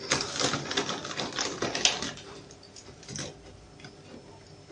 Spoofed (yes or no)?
no